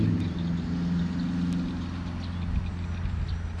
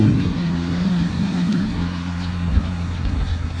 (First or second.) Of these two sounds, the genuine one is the first